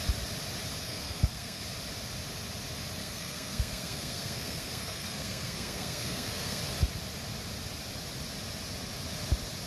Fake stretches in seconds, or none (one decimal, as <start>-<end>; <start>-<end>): 0.8-1.6; 3.0-6.6